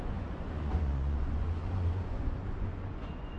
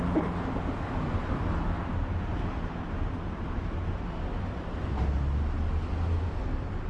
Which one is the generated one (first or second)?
first